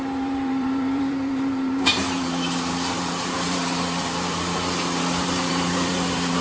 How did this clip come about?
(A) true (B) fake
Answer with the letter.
B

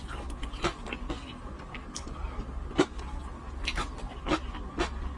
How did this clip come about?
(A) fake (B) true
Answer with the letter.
B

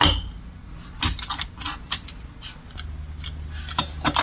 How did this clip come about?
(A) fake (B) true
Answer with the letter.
B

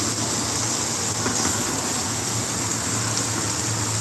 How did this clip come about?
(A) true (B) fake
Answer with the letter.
A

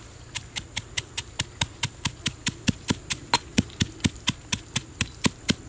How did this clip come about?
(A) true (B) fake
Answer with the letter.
A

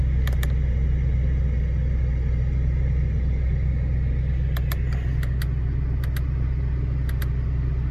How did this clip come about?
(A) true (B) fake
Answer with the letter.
A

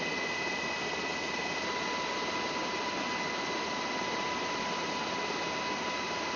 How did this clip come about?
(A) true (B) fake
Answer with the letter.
A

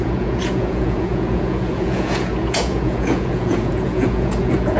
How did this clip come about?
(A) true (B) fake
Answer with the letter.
B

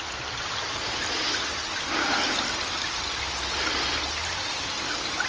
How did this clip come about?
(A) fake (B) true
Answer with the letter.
B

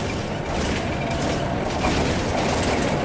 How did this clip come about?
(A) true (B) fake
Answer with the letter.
A